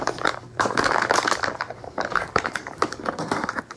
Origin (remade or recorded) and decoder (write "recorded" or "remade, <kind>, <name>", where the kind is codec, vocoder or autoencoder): remade, codec, DAC